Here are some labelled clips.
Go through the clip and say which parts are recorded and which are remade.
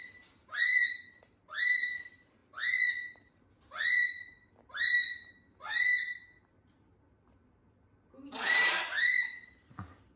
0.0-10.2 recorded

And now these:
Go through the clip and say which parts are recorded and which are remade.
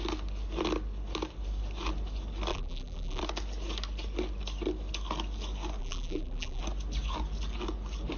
0.0-2.5 recorded; 2.5-3.2 remade; 3.2-5.8 recorded; 5.8-6.6 remade; 6.6-8.2 recorded